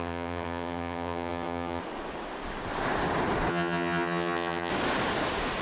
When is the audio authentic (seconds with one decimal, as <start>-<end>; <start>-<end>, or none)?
1.8-3.5; 4.7-5.6